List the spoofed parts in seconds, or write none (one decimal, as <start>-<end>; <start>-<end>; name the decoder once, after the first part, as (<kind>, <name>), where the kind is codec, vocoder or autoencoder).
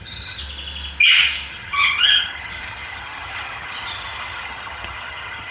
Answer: 0.0-0.4 (vocoder, HiFi-GAN); 1.5-5.5